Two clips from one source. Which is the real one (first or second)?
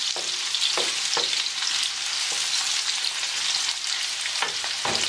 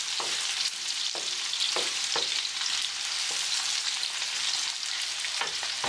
first